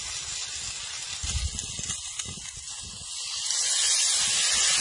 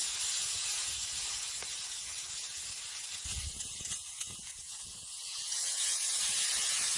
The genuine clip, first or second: first